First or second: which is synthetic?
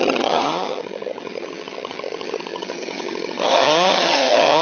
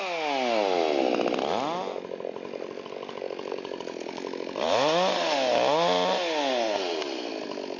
first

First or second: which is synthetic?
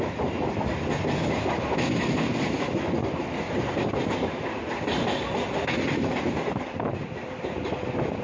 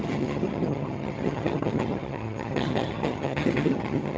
second